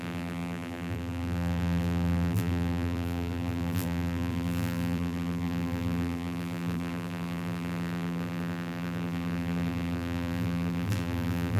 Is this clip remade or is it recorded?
remade